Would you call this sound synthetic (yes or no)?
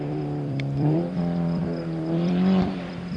yes